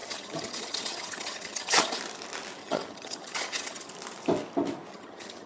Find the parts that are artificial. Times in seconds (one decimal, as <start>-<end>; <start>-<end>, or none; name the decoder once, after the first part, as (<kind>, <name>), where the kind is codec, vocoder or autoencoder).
0.0-2.0 (vocoder, HiFi-GAN); 2.6-3.9; 4.9-5.5